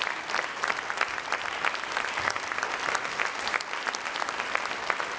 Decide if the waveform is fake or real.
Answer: real